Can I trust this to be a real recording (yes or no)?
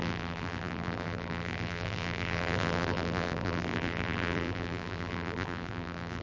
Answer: no